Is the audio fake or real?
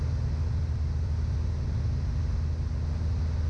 real